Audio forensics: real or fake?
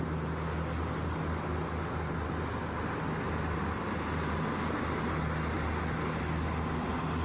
real